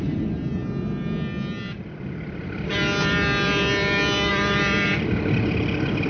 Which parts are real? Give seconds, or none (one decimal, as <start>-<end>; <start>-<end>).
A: 0.6-4.3